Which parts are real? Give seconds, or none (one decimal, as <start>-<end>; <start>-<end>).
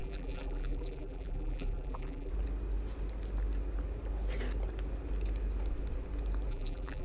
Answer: 2.3-6.5